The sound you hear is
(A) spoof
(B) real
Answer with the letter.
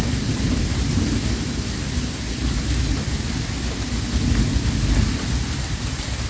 B